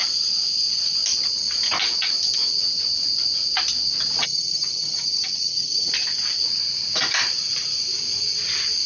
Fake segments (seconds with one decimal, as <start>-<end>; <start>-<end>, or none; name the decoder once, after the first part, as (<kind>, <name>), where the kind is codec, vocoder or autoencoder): 4.2-5.9 (vocoder, HiFi-GAN)